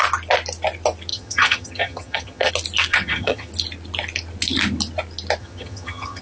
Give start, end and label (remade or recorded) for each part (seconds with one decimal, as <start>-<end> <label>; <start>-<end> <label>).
0.0-1.1 recorded; 1.1-2.5 remade; 2.5-2.9 recorded; 2.9-3.5 remade; 3.5-5.4 recorded; 5.4-6.2 remade